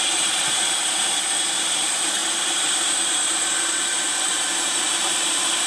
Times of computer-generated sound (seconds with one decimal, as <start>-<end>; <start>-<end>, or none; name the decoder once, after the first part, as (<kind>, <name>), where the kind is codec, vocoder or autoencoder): 0.0-5.7 (vocoder, BigVGAN v2)